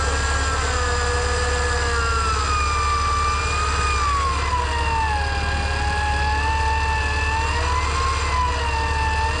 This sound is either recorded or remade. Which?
recorded